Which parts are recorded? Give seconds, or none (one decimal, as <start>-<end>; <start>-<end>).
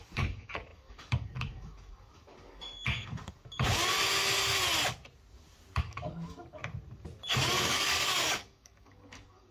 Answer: 3.8-5.8; 6.6-7.3